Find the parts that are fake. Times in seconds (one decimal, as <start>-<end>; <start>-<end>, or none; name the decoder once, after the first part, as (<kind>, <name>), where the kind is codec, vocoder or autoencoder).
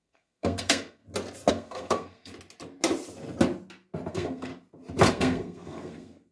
0.0-1.0 (codec, SNAC); 1.5-2.3; 4.1-4.5; 5.1-6.3